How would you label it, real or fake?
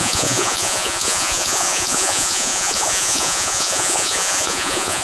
fake